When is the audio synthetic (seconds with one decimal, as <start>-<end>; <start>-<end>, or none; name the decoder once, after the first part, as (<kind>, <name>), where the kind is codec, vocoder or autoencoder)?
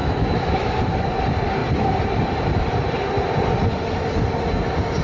0.0-0.8 (autoencoder, DAC-VAE)